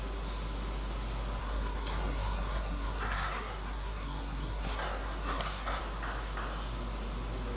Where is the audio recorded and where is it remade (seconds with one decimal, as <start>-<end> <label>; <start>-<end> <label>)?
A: 0.0-1.4 recorded; 1.4-5.8 remade; 5.8-7.6 recorded